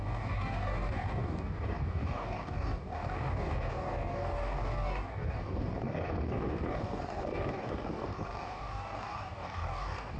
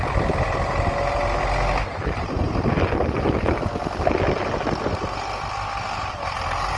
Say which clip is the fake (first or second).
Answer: first